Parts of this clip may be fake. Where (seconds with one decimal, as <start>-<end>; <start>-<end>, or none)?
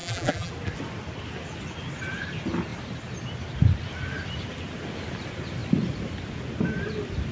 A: 0.0-0.5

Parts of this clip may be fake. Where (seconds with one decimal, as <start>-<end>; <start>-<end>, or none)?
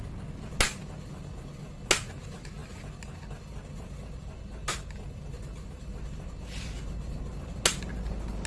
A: none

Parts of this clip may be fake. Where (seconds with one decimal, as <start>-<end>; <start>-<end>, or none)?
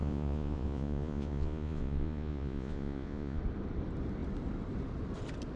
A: 0.0-3.4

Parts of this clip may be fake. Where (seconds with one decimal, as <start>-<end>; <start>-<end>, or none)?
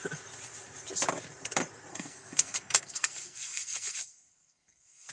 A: 1.9-5.1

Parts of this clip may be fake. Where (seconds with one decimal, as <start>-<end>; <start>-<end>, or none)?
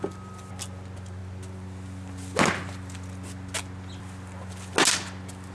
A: none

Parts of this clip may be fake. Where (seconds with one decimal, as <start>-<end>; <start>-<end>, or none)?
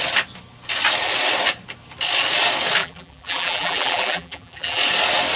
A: 2.8-4.8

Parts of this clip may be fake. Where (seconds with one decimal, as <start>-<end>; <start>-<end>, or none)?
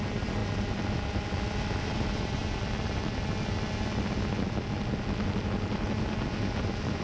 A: 0.0-2.4; 6.6-7.0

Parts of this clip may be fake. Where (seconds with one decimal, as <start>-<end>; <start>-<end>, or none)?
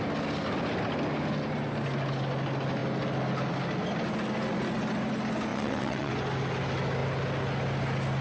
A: 5.5-6.1